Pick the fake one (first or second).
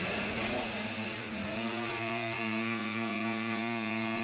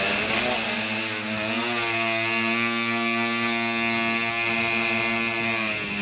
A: first